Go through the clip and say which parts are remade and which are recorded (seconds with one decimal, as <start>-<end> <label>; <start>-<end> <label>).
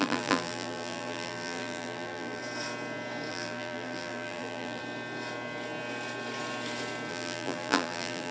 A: 0.0-2.4 remade; 2.4-3.3 recorded; 3.3-4.8 remade; 4.8-7.1 recorded; 7.1-8.3 remade